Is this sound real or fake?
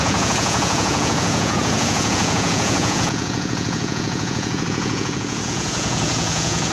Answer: fake